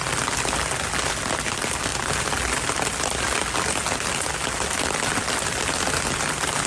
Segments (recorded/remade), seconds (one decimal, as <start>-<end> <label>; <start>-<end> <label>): 0.0-6.7 recorded